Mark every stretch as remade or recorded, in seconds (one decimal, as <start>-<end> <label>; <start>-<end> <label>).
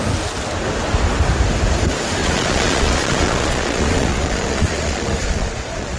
0.0-2.2 recorded; 2.2-6.0 remade